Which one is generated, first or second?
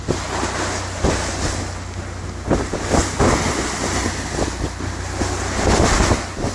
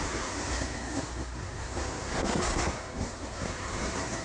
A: second